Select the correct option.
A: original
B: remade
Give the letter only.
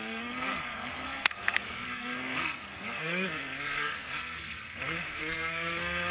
B